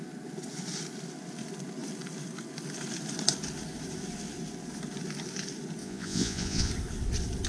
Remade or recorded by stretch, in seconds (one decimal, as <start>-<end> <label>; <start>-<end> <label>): 0.0-5.8 recorded; 5.8-6.7 remade; 6.7-7.5 recorded